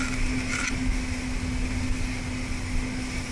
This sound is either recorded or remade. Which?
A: recorded